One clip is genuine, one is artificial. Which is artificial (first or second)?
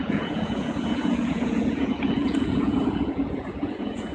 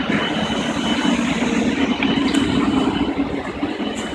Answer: first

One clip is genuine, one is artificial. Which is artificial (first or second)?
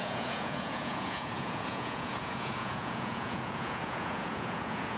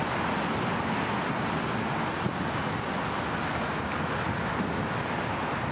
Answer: first